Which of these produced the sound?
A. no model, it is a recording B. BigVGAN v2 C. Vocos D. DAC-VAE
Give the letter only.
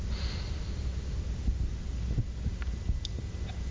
A